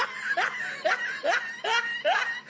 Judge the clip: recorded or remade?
recorded